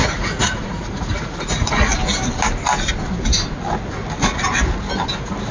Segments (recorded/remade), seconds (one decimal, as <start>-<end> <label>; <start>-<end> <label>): 0.0-1.9 remade; 1.9-5.5 recorded